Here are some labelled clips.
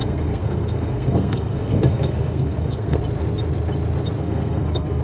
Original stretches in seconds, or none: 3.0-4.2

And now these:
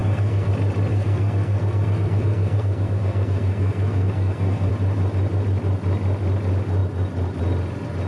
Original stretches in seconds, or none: 0.5-0.9; 4.7-8.1

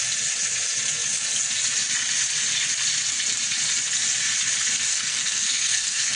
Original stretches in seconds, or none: 0.0-4.9

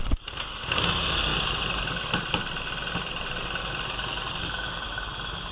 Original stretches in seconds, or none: 0.0-5.5

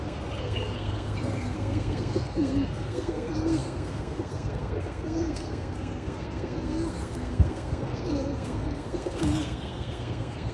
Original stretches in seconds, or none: none

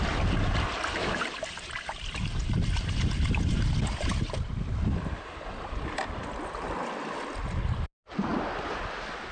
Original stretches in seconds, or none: 0.0-9.3